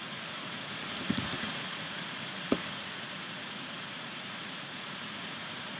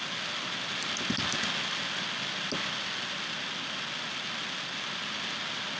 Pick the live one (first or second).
second